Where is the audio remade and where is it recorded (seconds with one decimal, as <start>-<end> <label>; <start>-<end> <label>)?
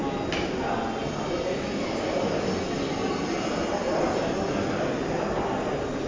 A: 0.0-6.1 recorded